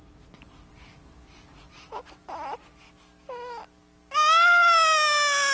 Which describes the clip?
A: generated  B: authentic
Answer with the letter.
B